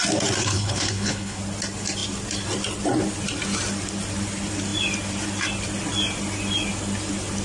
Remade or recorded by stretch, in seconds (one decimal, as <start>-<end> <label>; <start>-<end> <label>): 0.0-0.4 recorded; 0.4-1.4 remade; 1.4-7.4 recorded